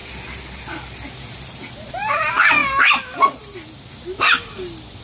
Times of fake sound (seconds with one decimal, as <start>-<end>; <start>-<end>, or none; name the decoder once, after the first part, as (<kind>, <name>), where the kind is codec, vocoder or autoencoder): none